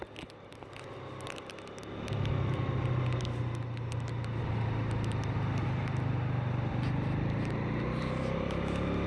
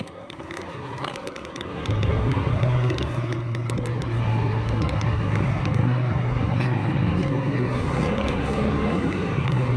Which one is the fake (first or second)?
second